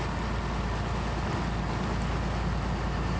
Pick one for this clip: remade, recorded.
recorded